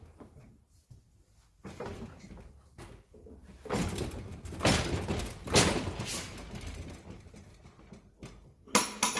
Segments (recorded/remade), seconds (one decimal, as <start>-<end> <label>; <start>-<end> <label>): 0.0-9.2 recorded